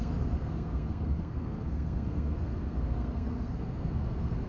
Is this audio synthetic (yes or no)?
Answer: yes